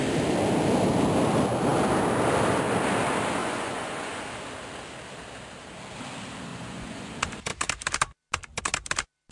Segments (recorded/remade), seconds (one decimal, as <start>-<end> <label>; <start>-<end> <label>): 0.0-3.4 recorded; 3.4-4.2 remade; 4.2-6.5 recorded; 6.5-7.1 remade; 7.1-9.3 recorded